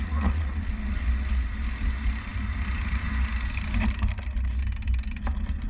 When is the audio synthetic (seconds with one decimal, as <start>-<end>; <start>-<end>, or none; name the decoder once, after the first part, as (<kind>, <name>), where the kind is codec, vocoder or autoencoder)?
0.0-0.6 (vocoder, Vocos)